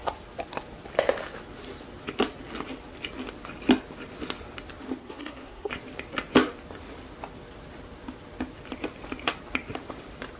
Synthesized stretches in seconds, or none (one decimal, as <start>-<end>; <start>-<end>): 5.0-5.7

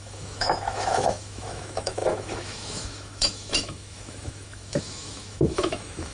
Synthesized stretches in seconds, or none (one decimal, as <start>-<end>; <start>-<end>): 0.0-6.1

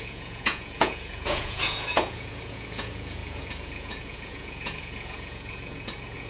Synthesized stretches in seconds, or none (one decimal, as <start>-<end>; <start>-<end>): 0.0-6.3